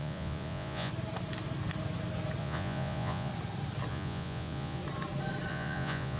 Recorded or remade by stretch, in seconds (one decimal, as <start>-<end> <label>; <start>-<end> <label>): 0.0-0.9 remade; 0.9-2.4 recorded; 2.4-3.3 remade; 3.3-3.9 recorded; 3.9-4.8 remade; 4.8-5.5 recorded; 5.5-6.2 remade